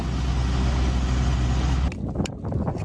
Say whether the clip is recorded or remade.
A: recorded